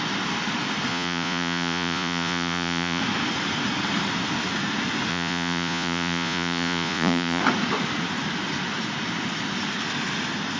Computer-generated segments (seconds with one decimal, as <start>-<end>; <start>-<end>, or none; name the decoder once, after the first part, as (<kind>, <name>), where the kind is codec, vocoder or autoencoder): 0.9-3.0 (vocoder, Vocos); 5.1-7.4